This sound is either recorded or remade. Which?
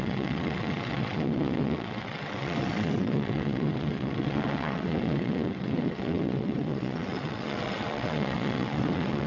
remade